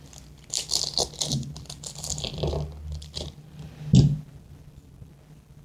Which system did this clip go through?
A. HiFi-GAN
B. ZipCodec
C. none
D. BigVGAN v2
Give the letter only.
D